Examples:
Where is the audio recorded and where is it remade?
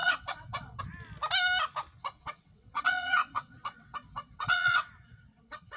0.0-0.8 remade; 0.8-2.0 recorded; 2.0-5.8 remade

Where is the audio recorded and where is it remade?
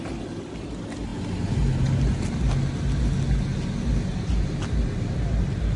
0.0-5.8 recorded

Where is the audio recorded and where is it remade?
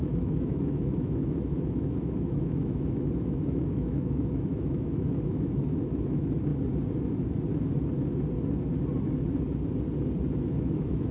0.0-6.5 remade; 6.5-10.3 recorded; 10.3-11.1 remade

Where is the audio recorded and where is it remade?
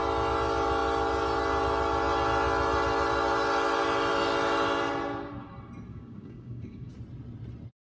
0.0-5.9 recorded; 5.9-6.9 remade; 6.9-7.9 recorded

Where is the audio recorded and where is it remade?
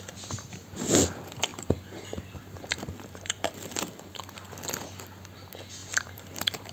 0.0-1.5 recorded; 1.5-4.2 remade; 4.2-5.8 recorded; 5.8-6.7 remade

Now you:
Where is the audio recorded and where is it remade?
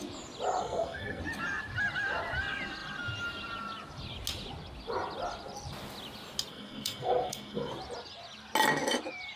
0.0-0.6 recorded; 0.6-1.2 remade; 1.2-6.5 recorded; 6.5-7.7 remade; 7.7-9.4 recorded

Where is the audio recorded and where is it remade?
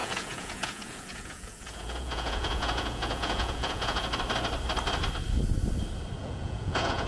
0.0-4.1 remade; 4.1-6.2 recorded; 6.2-7.1 remade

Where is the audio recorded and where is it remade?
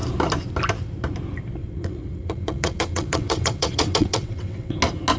0.0-1.6 recorded; 1.6-4.7 remade; 4.7-5.2 recorded